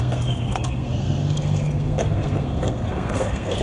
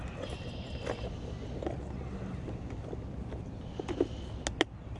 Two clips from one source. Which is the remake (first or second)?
first